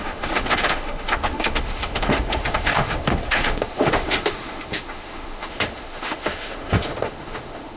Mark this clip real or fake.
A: fake